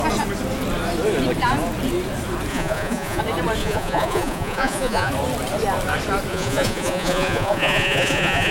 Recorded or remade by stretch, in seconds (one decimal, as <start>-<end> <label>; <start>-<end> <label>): 0.0-2.5 recorded; 2.5-3.2 remade; 3.2-3.6 recorded; 3.6-5.1 remade; 5.1-6.3 recorded; 6.3-8.5 remade